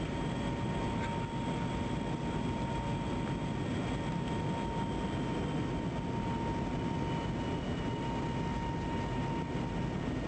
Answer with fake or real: real